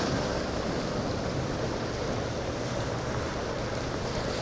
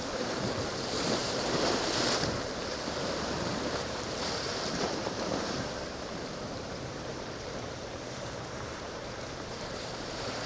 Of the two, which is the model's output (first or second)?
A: second